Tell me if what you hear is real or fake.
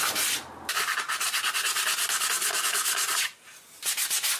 real